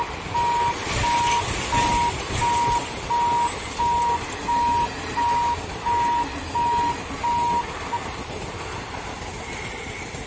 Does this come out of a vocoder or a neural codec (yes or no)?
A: no